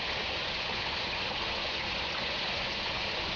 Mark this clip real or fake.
fake